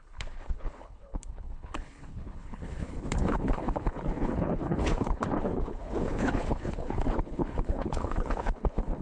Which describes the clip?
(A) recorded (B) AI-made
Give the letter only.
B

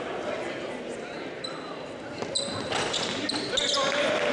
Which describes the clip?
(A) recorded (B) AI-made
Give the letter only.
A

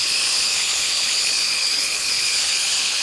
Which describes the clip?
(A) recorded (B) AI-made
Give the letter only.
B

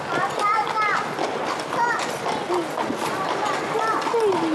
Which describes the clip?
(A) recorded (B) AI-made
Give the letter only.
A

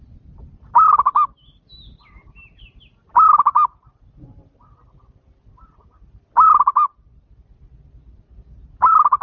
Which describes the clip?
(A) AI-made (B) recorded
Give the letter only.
B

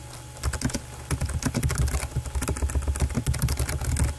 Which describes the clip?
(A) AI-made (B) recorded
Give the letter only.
B